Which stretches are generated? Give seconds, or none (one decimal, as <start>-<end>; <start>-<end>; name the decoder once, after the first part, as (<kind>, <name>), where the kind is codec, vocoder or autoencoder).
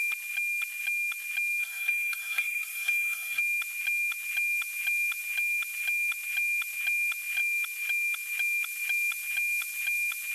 1.6-3.4 (codec, SNAC)